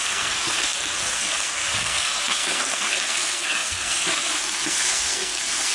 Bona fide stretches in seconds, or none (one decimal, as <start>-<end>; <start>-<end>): none